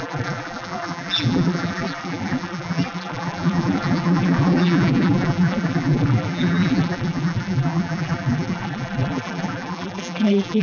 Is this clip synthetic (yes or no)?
yes